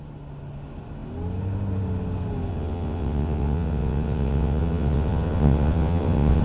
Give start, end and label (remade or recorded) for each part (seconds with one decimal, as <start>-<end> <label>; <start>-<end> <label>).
0.0-2.5 recorded; 2.5-6.4 remade